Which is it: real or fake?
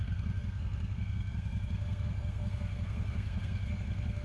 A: fake